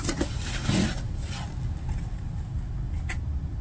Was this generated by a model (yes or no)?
no